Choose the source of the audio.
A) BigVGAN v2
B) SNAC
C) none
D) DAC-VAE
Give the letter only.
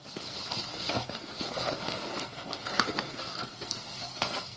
B